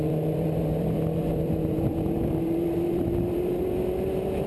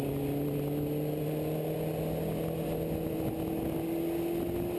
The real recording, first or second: second